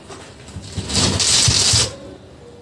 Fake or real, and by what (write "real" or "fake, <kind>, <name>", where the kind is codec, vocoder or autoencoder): real